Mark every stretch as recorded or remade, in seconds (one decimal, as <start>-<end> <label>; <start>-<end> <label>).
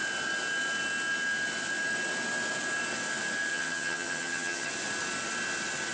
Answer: 0.0-3.5 recorded; 3.5-4.7 remade; 4.7-5.9 recorded